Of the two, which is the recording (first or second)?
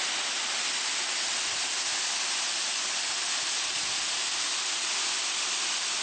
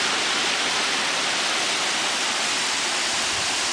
first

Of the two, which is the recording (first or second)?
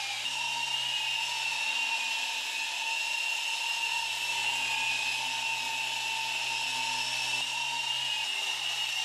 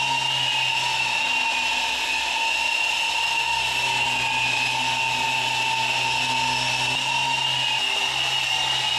first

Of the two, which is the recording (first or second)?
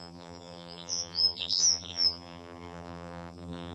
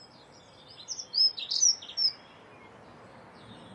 second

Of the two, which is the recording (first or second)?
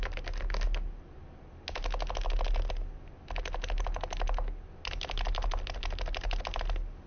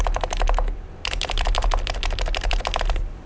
first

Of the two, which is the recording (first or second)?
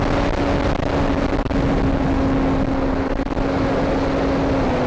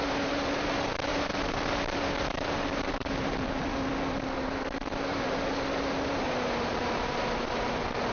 first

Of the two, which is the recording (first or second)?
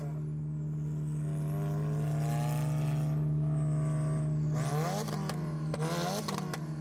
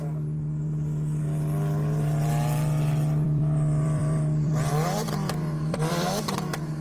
first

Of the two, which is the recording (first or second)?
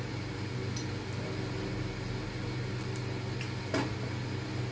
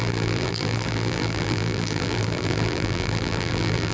first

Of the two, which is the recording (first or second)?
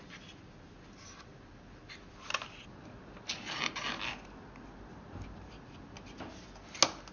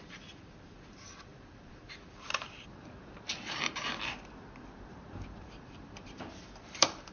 first